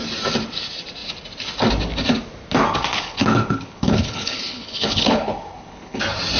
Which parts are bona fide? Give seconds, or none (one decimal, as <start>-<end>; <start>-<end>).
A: 0.0-2.9; 6.0-6.4

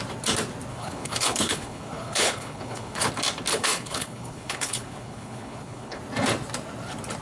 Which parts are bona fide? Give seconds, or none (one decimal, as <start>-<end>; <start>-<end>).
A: 0.0-0.7; 3.1-3.5; 6.0-7.2

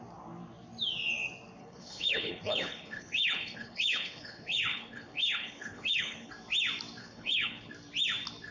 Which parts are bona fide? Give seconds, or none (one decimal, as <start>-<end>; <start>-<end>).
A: 0.0-1.6; 6.3-7.0; 7.7-8.5

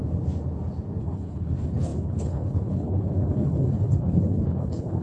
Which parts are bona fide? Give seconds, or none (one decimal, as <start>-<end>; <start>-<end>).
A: 0.0-1.0

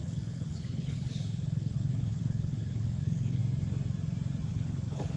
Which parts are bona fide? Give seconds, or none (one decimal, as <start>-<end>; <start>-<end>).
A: 3.4-4.5

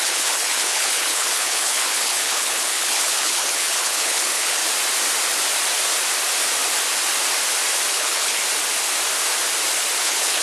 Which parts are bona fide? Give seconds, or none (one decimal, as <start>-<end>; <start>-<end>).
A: 4.6-7.9; 8.4-10.0

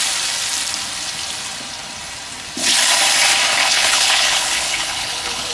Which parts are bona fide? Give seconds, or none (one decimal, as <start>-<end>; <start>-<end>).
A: 0.0-3.6

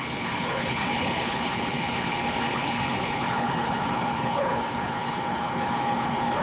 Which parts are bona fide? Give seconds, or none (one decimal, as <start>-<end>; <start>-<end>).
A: none